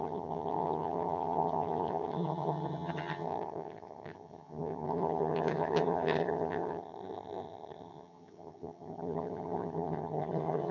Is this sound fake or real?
fake